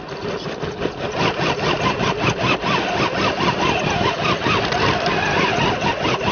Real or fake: real